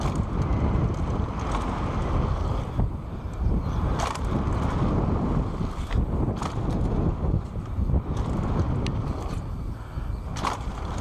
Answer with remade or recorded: recorded